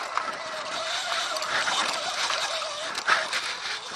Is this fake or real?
real